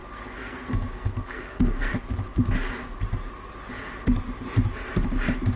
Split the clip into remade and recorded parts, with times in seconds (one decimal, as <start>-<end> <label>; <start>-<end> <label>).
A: 0.0-1.9 remade; 1.9-5.6 recorded